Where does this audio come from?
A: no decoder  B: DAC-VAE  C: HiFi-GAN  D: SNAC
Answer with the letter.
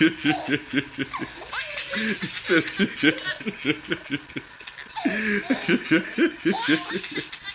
A